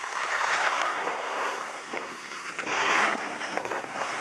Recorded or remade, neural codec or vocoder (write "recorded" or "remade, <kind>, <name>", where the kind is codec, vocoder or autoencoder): remade, codec, SNAC